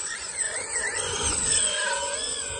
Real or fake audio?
fake